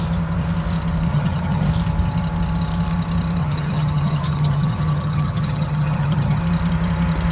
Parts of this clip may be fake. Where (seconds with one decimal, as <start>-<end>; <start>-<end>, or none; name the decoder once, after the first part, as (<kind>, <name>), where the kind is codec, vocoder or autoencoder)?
1.1-1.7 (vocoder, HiFi-GAN); 3.4-6.4